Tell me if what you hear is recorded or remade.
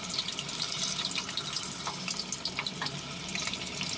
recorded